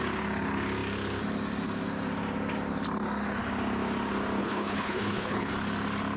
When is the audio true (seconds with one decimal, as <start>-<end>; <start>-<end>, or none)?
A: 0.0-4.4; 5.5-6.2